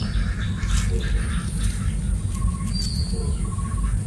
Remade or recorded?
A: recorded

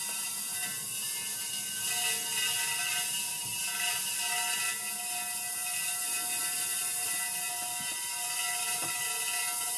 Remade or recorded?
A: recorded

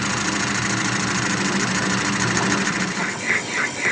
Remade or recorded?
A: recorded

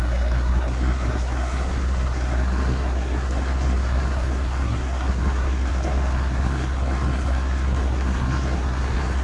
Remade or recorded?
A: remade